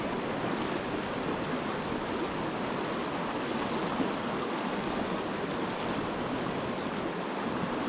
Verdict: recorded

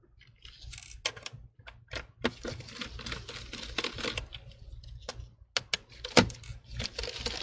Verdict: recorded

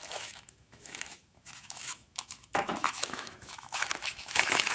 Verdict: remade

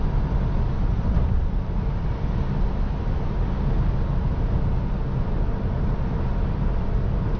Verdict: recorded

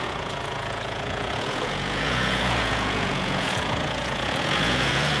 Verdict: remade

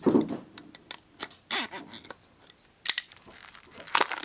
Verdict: recorded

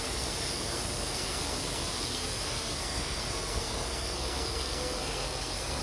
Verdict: remade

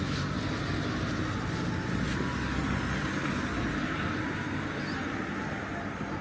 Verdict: recorded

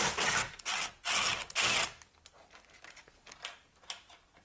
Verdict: recorded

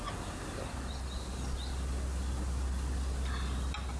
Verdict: recorded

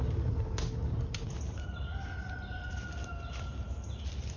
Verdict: recorded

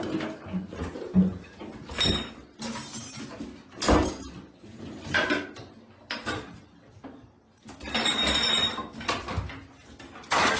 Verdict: recorded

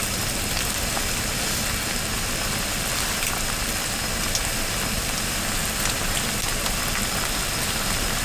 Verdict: recorded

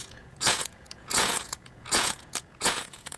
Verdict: remade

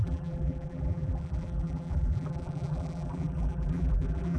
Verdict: remade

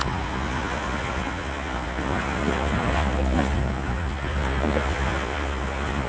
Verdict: remade